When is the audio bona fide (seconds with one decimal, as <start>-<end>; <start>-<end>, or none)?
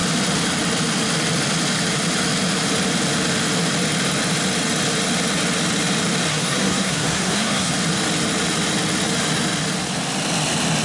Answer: 0.0-6.3; 7.7-10.8